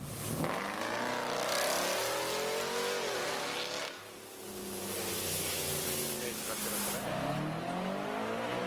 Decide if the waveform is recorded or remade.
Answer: recorded